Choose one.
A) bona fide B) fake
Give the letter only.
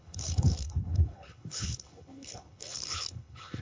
B